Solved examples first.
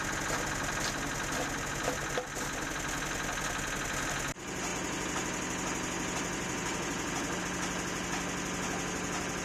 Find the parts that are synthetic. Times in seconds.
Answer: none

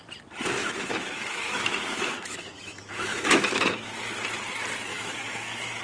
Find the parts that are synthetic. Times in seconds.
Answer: 0.6-4.1; 4.9-5.8

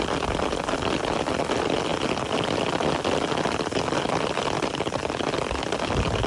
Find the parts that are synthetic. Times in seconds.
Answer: none

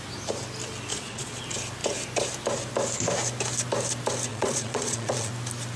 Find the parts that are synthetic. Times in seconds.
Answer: 0.9-1.4; 4.3-5.3

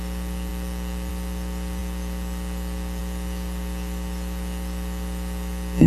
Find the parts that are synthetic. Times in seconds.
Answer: none

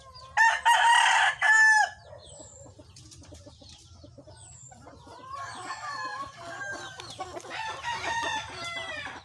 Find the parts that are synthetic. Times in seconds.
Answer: 4.6-5.6; 6.1-6.6

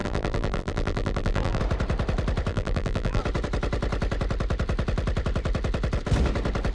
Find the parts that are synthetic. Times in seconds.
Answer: 0.0-1.6; 2.5-3.2

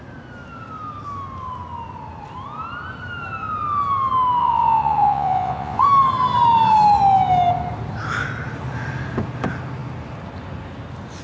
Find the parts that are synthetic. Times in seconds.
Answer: 4.4-5.8